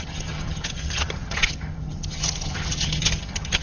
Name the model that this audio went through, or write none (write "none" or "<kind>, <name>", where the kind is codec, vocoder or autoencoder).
vocoder, HiFi-GAN